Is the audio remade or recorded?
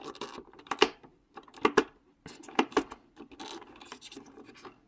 recorded